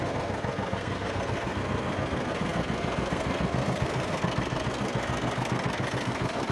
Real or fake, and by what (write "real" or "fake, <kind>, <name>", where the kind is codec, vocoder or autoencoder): fake, codec, SNAC